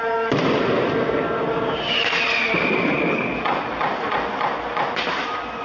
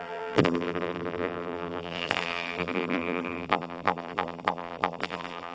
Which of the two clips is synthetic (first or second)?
second